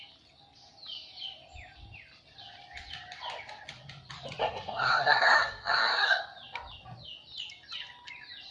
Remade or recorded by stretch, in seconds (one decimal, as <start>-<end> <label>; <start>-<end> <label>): 0.0-4.4 recorded; 4.4-6.2 remade; 6.2-8.5 recorded